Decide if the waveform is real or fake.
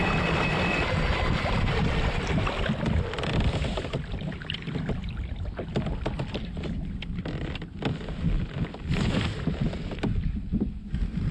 real